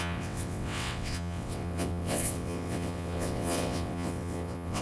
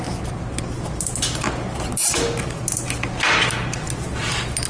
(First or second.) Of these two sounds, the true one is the second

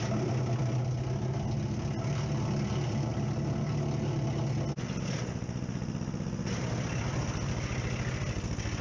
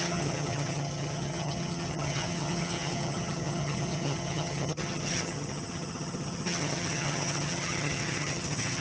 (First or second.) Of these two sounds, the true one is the first